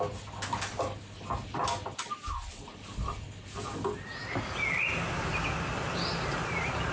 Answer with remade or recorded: recorded